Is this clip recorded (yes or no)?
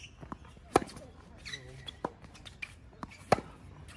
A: yes